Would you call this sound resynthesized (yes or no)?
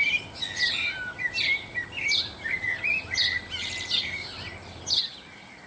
no